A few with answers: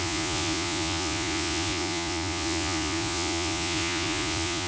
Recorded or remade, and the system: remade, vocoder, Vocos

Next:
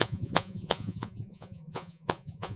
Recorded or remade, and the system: remade, vocoder, Vocos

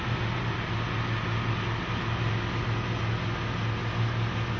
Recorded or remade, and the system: recorded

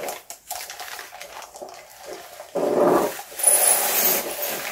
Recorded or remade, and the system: recorded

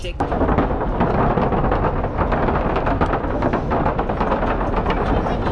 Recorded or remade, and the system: recorded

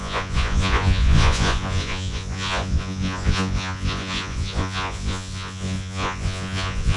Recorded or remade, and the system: remade, vocoder, Vocos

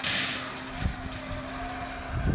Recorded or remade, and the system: recorded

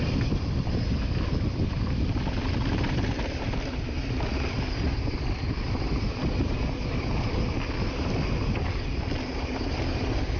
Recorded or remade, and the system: recorded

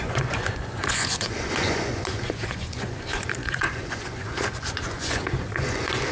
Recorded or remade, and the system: remade, vocoder, Vocos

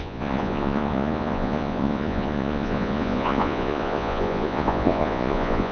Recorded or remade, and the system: remade, vocoder, Vocos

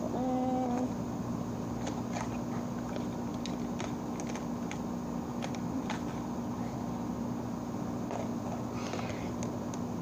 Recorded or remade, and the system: recorded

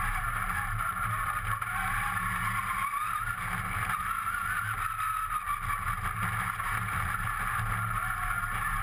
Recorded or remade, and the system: recorded